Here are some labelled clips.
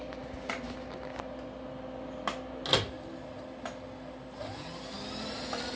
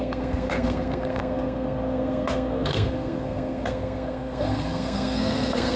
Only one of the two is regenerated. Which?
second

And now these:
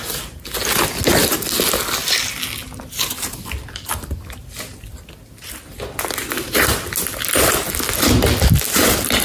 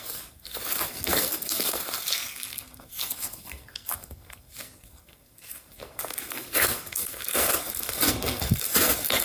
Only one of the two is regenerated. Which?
second